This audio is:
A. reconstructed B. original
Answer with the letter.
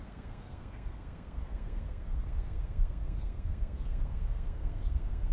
A